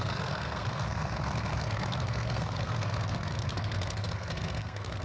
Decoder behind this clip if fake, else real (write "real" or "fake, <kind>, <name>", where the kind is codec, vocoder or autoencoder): fake, codec, SNAC